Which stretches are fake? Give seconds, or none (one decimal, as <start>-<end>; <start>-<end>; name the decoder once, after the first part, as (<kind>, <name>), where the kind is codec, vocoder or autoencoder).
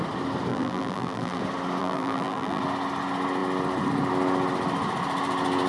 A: 0.5-1.4 (vocoder, BigVGAN v2); 1.8-2.6